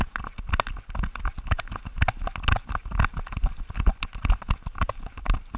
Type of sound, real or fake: real